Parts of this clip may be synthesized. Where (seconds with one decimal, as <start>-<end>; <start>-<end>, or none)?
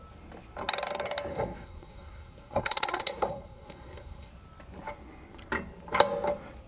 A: 1.3-4.3